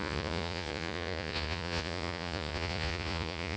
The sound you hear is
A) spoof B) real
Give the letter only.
A